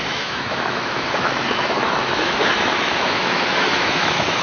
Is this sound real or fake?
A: fake